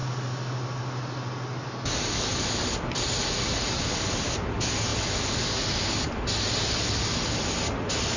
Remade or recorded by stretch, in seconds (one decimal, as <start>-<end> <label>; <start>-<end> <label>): 0.0-8.2 recorded